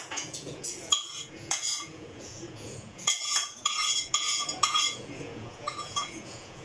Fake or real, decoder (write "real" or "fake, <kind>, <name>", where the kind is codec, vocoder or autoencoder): fake, vocoder, Vocos